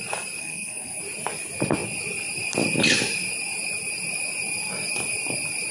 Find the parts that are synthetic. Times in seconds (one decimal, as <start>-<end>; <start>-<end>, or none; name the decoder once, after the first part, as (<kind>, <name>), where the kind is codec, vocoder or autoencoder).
0.4-1.0 (codec, SNAC)